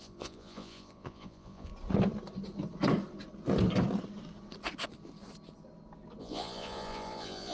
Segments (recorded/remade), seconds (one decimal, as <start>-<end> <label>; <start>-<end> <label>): 0.0-1.7 remade; 1.7-6.2 recorded; 6.2-7.5 remade